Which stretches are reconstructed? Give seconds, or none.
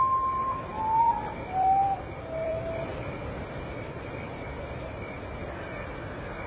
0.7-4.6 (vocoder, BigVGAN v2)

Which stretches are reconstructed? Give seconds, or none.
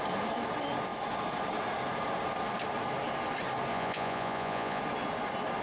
3.7-4.8 (vocoder, Vocos)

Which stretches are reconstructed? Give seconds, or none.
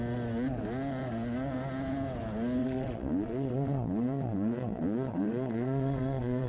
2.6-6.5 (vocoder, WaveNeXt)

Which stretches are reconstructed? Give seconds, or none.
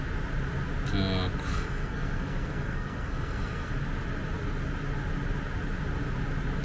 1.5-3.7 (codec, SNAC)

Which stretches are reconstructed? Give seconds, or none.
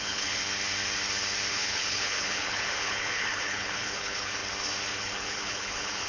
0.0-0.4 (codec, HILCodec); 1.5-4.4; 4.9-6.1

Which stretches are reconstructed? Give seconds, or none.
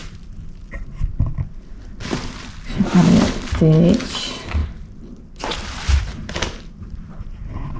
0.0-0.6 (vocoder, BigVGAN v2); 4.6-7.3